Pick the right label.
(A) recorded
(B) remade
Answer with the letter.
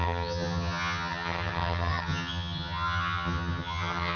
B